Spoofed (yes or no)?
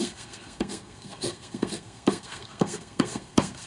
yes